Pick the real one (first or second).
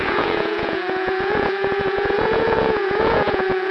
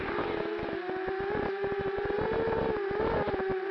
second